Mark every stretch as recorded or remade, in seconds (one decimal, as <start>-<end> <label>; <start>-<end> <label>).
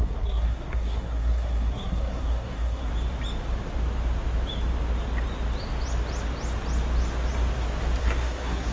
0.0-2.9 remade; 2.9-8.0 recorded; 8.0-8.7 remade